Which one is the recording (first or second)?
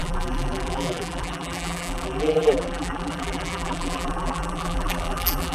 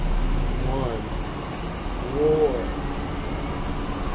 second